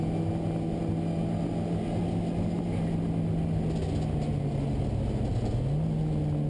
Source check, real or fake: real